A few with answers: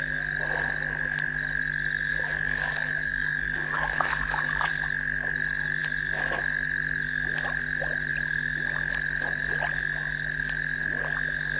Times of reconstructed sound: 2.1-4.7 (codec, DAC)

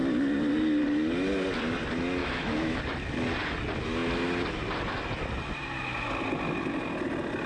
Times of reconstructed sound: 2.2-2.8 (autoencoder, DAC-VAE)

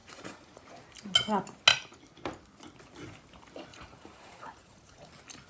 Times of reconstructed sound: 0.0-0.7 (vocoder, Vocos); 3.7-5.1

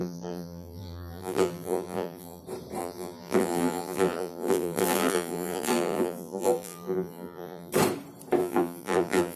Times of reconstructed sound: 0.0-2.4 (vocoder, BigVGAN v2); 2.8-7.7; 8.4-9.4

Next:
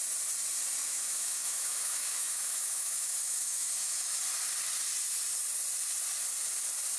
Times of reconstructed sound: 0.8-4.2 (autoencoder, DAC-VAE)

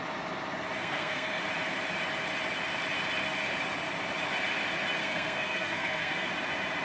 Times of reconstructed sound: 0.8-1.4 (codec, SNAC); 5.0-6.3